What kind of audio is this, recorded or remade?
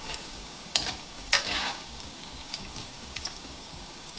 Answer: remade